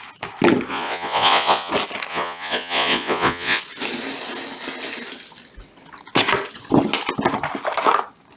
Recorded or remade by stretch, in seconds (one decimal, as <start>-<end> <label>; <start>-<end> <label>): 0.0-0.7 recorded; 0.7-1.7 remade; 1.7-2.1 recorded; 2.1-3.6 remade; 3.6-8.4 recorded